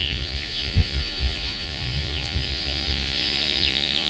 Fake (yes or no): yes